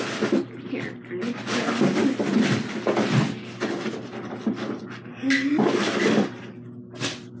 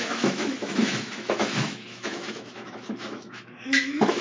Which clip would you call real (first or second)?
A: first